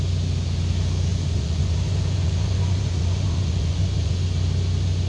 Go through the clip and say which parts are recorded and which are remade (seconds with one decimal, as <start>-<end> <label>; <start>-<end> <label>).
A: 0.0-1.1 recorded; 1.1-4.2 remade; 4.2-5.1 recorded